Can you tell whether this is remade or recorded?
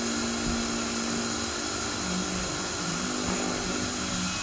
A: recorded